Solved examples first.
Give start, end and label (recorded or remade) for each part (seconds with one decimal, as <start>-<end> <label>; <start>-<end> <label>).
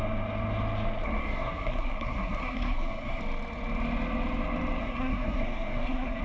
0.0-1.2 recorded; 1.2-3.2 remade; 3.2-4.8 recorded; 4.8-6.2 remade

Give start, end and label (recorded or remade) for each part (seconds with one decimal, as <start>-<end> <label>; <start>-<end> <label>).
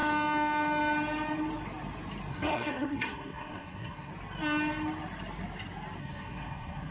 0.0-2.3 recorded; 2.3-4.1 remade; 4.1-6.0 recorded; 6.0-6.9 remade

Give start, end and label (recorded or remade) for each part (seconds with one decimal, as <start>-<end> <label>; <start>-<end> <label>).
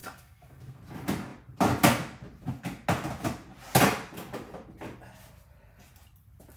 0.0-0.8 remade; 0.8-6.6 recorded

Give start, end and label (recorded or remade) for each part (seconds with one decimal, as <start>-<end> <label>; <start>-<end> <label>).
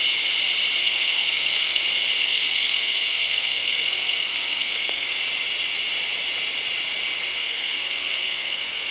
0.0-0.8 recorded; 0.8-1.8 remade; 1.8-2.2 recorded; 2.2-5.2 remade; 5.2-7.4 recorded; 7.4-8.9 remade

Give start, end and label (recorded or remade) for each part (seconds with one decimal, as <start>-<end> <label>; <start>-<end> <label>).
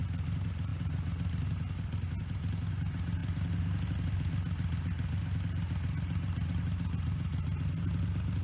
0.0-8.4 recorded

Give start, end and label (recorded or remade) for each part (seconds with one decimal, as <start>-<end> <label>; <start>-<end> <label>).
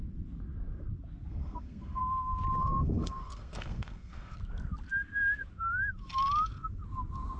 0.0-1.3 recorded; 1.3-2.0 remade; 2.0-2.6 recorded; 2.6-4.4 remade; 4.4-7.4 recorded